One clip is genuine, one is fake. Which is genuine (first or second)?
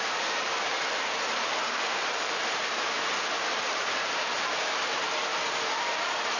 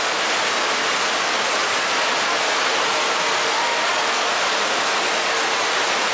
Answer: second